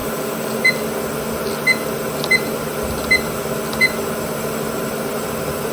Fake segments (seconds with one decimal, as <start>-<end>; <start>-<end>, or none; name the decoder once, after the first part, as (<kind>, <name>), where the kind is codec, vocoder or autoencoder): none

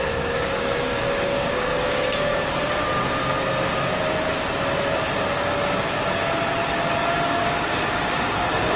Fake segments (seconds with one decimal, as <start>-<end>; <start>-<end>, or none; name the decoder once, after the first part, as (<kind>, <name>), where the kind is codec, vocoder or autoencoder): 0.0-2.9 (codec, DAC); 7.1-8.8

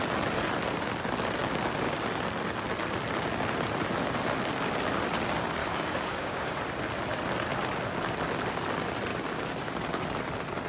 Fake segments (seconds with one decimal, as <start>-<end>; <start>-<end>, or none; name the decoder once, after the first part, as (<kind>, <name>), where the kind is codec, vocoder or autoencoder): 5.6-6.6 (codec, DAC); 9.1-9.7

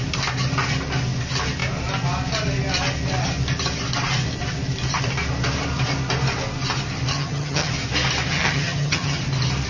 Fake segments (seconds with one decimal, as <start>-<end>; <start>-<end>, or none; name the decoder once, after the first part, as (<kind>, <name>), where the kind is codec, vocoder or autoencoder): 7.1-7.7 (vocoder, HiFi-GAN); 8.3-9.2

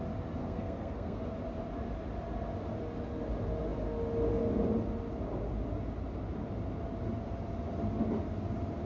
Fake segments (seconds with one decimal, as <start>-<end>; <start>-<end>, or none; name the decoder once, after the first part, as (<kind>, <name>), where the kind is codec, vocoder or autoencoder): 0.4-1.2 (codec, SNAC)

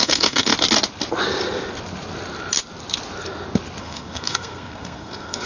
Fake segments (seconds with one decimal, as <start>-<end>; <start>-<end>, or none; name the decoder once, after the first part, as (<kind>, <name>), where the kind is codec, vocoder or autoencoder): 0.0-0.5 (codec, SNAC); 3.8-5.5

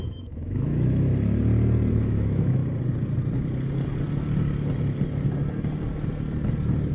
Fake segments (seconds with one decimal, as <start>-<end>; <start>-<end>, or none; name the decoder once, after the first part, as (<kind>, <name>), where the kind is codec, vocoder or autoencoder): 0.0-1.1 (autoencoder, DAC-VAE); 1.9-2.6